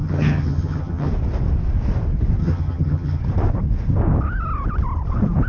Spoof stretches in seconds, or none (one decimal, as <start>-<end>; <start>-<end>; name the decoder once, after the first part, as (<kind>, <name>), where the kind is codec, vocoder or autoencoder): 0.0-1.1 (vocoder, HiFi-GAN); 2.4-3.2